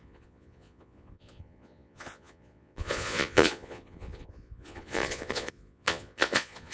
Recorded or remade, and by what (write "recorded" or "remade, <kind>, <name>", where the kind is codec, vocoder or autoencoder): remade, vocoder, Vocos